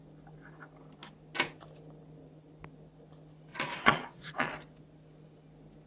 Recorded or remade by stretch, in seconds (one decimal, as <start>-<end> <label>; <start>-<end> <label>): 0.0-3.5 recorded; 3.5-4.5 remade; 4.5-5.9 recorded